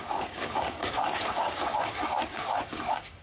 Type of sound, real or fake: fake